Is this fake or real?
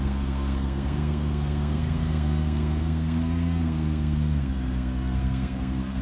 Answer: fake